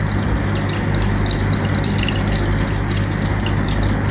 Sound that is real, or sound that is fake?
real